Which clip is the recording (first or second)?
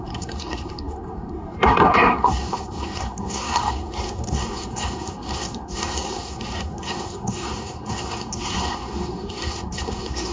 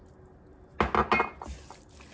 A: second